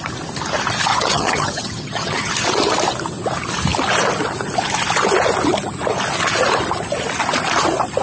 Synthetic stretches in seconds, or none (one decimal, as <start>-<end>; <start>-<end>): 0.9-2.3